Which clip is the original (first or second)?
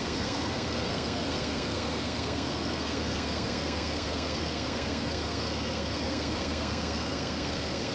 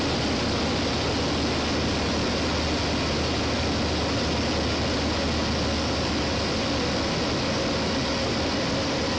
second